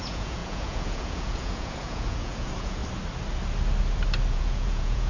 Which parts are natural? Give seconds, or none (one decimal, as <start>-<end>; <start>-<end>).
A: 2.8-4.3